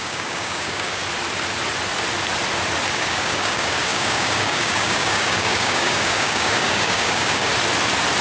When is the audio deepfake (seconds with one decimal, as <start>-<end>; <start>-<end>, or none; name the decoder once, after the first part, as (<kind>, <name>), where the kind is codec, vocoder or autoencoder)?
0.0-1.0 (codec, DAC); 2.9-7.5